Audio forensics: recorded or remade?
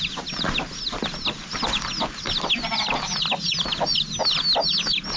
recorded